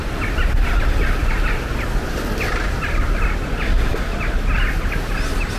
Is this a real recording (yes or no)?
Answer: yes